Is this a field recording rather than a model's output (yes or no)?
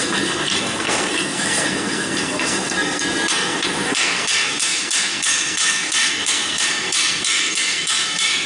no